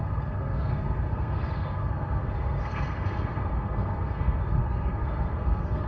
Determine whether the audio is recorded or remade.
remade